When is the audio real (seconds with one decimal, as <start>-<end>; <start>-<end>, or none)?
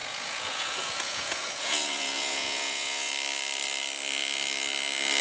3.1-5.2